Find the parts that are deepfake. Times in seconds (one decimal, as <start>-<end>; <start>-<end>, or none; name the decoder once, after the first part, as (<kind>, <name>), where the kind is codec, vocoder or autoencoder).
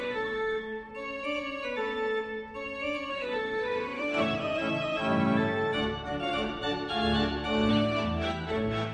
0.0-0.9 (autoencoder, DAC-VAE); 3.1-4.4; 7.7-8.9